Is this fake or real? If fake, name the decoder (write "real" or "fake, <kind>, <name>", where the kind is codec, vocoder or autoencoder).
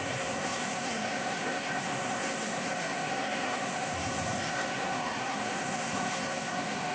fake, codec, SNAC